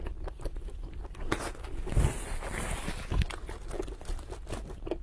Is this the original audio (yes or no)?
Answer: yes